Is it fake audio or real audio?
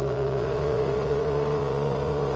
fake